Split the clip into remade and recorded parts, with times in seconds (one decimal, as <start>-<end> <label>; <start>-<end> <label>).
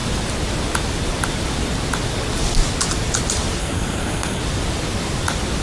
0.0-3.6 recorded; 3.6-4.4 remade; 4.4-5.6 recorded